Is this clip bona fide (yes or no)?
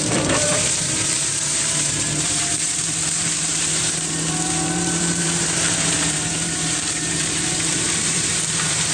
no